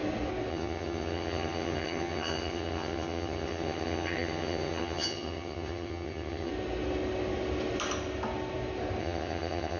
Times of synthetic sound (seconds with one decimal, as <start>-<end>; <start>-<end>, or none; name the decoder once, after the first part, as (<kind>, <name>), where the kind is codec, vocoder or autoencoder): 0.5-6.5 (vocoder, HiFi-GAN); 9.0-9.8

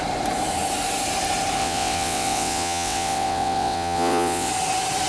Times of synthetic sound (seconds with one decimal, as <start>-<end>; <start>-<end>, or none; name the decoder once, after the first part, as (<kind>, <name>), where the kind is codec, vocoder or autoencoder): 1.6-4.5 (vocoder, WaveNeXt)

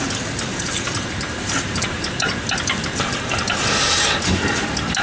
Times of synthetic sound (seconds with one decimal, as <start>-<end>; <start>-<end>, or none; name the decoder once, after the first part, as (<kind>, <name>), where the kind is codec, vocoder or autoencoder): 0.5-2.3 (vocoder, BigVGAN v2)

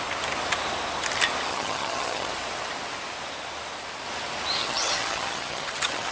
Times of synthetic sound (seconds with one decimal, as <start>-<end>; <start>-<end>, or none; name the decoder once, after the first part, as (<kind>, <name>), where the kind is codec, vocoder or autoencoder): 1.5-2.3 (vocoder, HiFi-GAN); 4.6-6.1

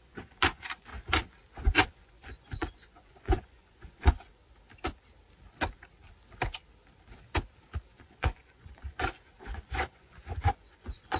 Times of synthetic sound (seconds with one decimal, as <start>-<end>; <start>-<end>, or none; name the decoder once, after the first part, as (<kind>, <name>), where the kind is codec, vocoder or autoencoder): 0.0-0.9 (vocoder, Vocos); 1.5-4.4; 8.0-11.2